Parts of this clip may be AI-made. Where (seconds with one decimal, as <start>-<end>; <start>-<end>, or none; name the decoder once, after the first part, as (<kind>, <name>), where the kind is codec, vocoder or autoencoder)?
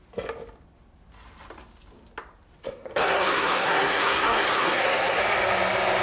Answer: 2.6-5.2 (codec, SNAC)